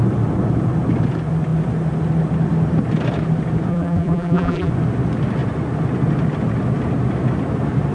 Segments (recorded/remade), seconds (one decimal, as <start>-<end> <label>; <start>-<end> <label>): 0.0-3.7 recorded; 3.7-4.7 remade; 4.7-7.9 recorded